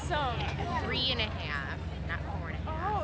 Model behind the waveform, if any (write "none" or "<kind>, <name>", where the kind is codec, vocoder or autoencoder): none